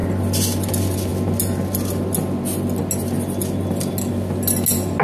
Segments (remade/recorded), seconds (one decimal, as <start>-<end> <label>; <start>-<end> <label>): 0.0-5.0 recorded